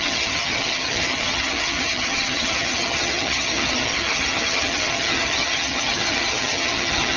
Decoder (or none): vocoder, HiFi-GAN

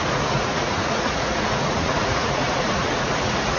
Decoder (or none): vocoder, Vocos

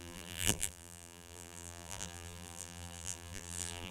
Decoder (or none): vocoder, BigVGAN v2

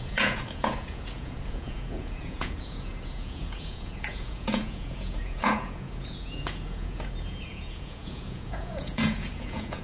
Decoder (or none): vocoder, Vocos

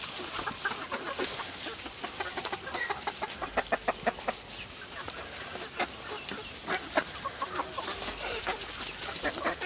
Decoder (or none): none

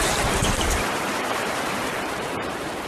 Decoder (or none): vocoder, BigVGAN v2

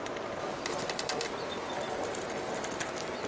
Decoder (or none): none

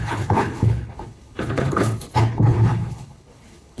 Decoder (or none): codec, HILCodec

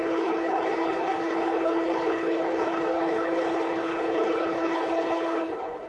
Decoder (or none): codec, HILCodec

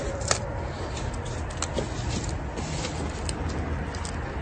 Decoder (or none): none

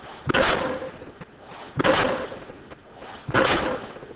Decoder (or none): none